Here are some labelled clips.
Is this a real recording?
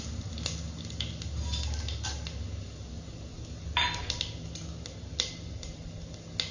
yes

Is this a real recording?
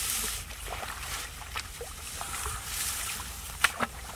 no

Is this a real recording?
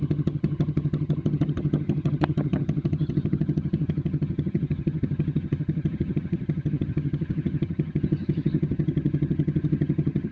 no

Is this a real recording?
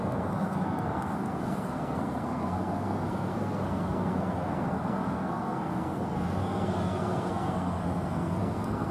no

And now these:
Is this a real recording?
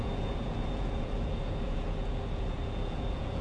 no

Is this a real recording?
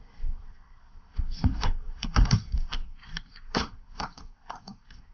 no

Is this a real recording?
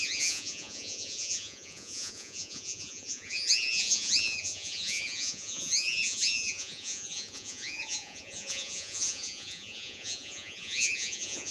no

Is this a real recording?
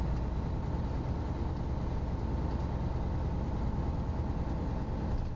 yes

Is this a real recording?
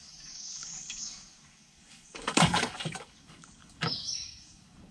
no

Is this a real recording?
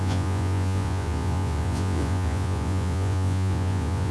no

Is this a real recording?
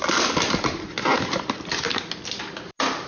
yes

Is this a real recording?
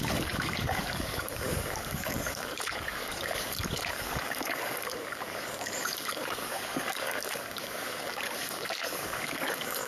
no